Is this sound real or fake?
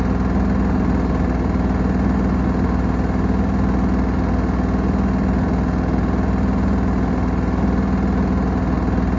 real